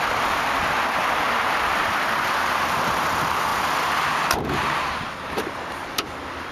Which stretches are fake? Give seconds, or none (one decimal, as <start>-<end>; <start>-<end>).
0.0-3.5; 5.7-6.5